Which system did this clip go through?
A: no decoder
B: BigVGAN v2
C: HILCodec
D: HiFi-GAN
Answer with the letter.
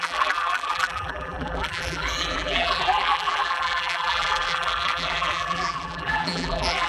B